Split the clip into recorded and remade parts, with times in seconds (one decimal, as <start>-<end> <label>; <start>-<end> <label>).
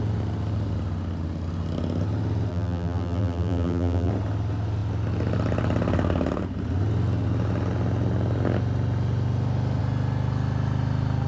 0.0-2.5 recorded; 2.5-4.1 remade; 4.1-11.3 recorded